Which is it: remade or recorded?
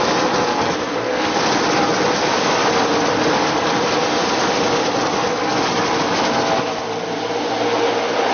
recorded